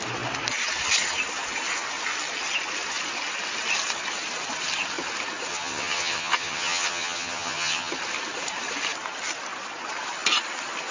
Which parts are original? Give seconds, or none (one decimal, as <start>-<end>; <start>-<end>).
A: 0.0-5.5; 7.9-10.9